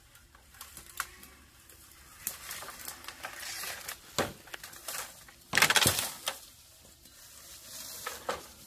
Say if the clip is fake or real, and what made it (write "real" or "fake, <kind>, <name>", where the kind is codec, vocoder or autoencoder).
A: real